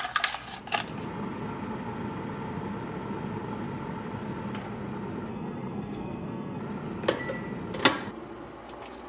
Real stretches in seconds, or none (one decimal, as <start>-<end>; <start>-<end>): 0.0-5.3; 6.6-9.1